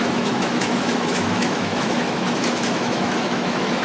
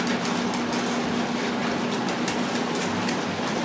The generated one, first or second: first